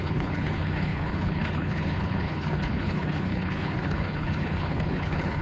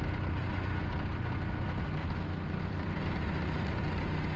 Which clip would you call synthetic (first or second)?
first